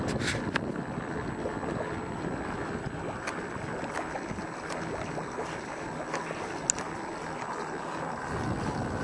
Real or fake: real